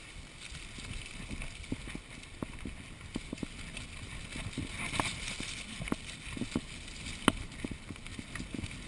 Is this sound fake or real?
real